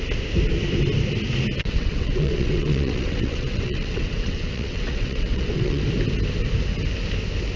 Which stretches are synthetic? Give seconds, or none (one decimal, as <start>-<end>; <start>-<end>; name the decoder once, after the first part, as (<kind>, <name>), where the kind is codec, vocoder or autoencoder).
1.6-5.8 (vocoder, WaveNeXt)